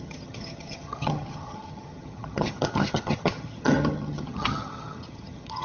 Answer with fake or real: fake